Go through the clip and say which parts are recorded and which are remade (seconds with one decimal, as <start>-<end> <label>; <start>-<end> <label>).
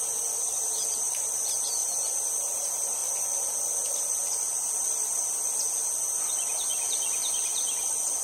0.0-8.2 recorded